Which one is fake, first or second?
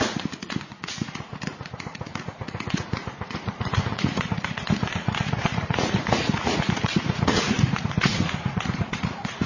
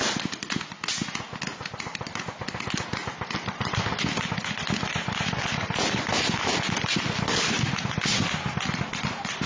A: first